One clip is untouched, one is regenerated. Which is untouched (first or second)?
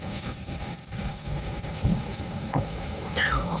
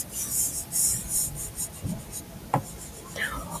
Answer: second